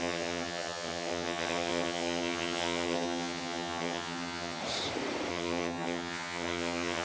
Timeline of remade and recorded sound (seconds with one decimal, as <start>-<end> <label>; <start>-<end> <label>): 0.0-4.6 remade; 4.6-5.3 recorded; 5.3-7.0 remade